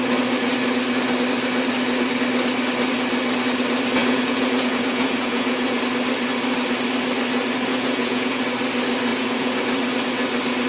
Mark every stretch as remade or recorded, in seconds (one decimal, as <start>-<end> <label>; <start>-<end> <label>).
0.0-4.0 recorded; 4.0-5.8 remade; 5.8-7.7 recorded; 7.7-8.4 remade; 8.4-9.1 recorded; 9.1-9.6 remade; 9.6-10.7 recorded